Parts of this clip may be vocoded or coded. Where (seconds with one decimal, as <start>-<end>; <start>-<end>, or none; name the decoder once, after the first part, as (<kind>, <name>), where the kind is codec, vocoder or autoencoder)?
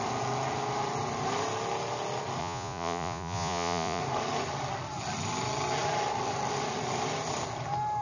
2.4-4.0 (vocoder, Vocos)